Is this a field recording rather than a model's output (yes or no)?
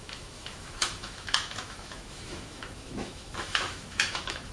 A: no